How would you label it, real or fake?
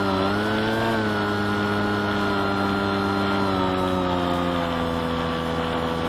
real